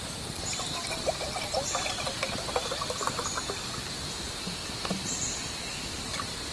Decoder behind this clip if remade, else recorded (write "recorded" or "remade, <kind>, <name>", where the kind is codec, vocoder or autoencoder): recorded